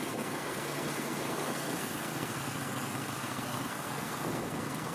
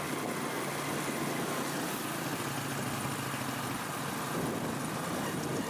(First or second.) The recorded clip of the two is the second